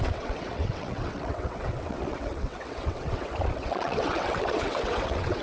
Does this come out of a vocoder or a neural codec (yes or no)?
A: yes